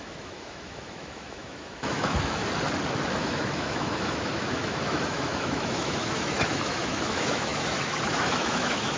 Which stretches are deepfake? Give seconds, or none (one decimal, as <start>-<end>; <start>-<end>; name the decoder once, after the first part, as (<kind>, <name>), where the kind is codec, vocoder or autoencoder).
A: 0.0-2.4 (autoencoder, DAC-VAE); 3.1-9.0